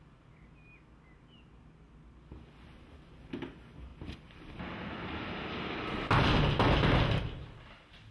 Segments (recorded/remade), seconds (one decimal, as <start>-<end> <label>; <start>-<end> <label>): 0.0-8.1 recorded